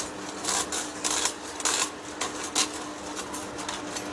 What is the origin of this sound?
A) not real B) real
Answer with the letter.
B